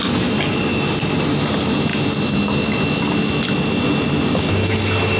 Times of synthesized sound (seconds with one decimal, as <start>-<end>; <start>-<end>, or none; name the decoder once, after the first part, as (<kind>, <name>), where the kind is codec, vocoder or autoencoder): none